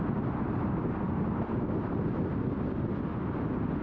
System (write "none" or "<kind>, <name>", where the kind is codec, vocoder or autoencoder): none